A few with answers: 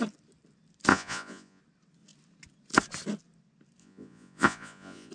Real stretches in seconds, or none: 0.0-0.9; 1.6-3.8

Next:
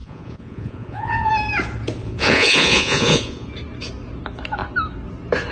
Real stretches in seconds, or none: 1.3-2.0; 3.5-5.5

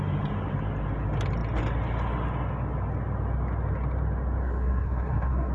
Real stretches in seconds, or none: 0.0-4.4

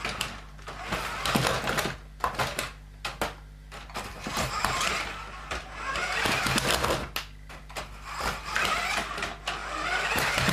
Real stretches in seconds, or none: 0.0-4.1; 4.9-10.5

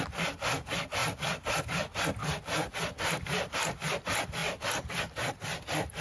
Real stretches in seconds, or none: 0.0-6.0

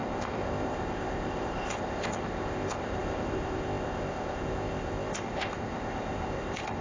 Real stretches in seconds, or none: none

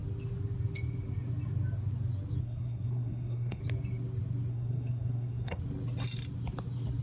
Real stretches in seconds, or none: 0.0-2.4; 3.6-4.5; 5.6-7.0

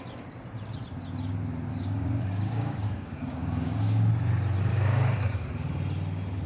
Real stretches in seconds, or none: 0.0-1.7; 4.1-4.7; 5.5-6.5